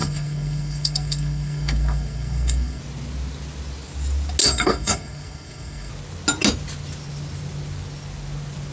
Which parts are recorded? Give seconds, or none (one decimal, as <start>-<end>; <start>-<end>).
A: 2.8-4.4; 5.9-8.7